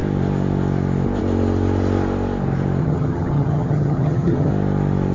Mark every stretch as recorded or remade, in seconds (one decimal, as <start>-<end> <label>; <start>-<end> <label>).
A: 0.0-2.8 recorded; 2.8-4.5 remade; 4.5-5.1 recorded